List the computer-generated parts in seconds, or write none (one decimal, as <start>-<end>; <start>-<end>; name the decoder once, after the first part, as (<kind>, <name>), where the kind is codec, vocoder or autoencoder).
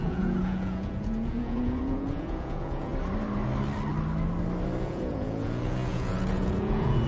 0.0-2.9 (vocoder, Vocos); 4.8-7.1